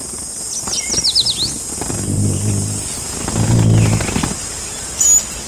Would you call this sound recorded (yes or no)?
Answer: yes